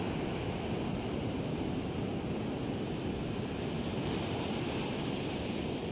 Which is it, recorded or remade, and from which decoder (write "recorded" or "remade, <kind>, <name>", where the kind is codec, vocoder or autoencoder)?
recorded